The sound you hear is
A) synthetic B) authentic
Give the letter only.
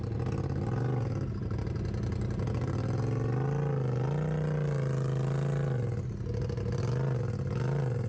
B